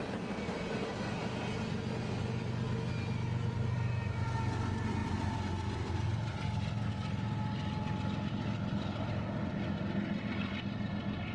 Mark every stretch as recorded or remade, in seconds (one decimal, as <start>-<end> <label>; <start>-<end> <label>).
0.0-11.3 recorded